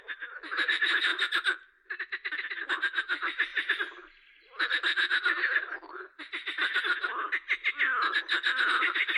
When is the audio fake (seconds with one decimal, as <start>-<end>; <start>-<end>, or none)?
1.1-2.0